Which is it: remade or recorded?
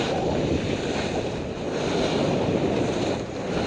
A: recorded